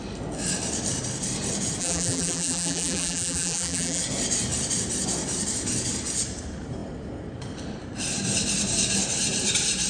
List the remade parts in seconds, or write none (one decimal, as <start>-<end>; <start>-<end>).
1.8-4.0